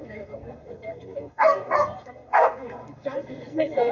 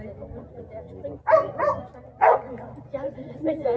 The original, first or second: second